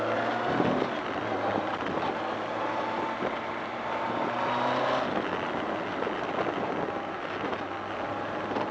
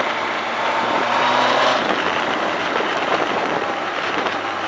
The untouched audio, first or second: first